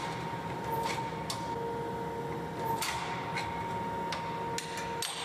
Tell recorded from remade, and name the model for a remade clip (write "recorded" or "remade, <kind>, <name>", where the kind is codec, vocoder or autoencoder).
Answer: recorded